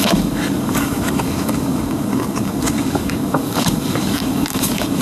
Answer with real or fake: fake